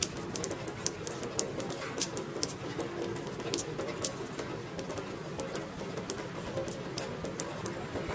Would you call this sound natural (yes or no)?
yes